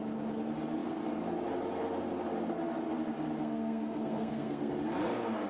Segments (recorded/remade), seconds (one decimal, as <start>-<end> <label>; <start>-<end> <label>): 0.0-3.4 recorded; 3.4-4.7 remade; 4.7-5.5 recorded